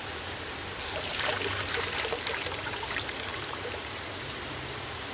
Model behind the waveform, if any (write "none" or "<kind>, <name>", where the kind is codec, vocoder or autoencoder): vocoder, BigVGAN v2